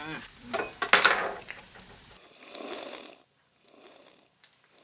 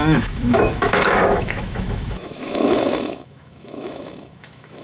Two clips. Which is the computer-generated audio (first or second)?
second